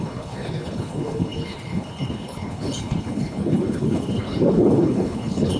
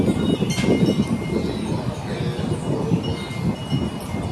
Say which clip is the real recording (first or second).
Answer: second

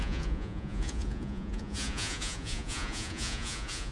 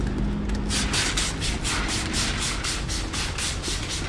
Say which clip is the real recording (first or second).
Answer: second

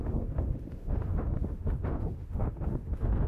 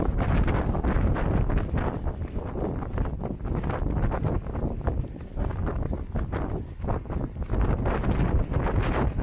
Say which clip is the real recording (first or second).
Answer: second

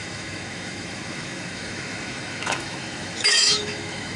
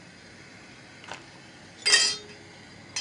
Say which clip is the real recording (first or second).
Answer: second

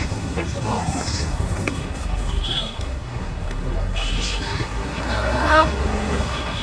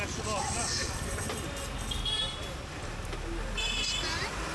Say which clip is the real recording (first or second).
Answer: second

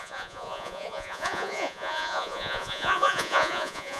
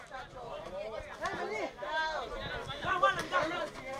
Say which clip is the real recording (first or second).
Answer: second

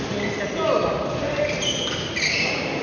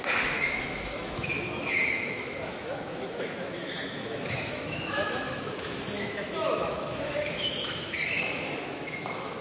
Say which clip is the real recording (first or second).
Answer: first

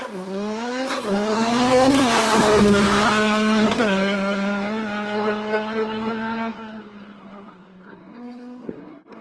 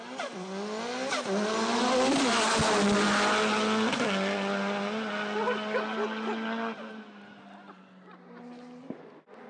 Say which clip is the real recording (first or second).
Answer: second